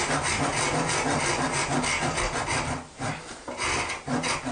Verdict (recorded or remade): recorded